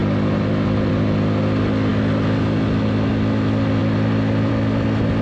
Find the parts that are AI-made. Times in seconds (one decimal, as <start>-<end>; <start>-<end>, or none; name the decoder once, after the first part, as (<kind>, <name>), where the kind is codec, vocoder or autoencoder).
none